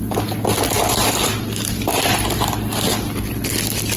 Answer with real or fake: real